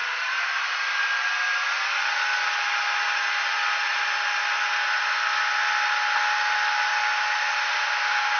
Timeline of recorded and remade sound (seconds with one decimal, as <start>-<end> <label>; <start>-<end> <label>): 0.0-8.4 recorded